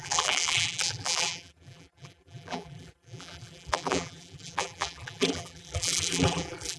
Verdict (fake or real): fake